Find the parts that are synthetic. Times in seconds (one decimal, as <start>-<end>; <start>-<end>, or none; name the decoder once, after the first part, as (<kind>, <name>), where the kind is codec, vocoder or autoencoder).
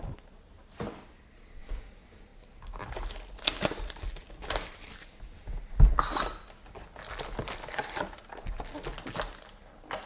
none